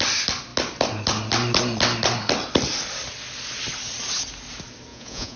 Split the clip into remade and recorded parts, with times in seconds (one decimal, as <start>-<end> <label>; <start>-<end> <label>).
0.0-4.9 recorded; 4.9-5.4 remade